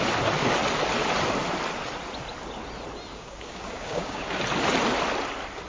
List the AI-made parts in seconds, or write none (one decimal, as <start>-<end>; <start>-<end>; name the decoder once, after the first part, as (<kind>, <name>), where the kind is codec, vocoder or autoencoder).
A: 3.1-4.4 (codec, DAC)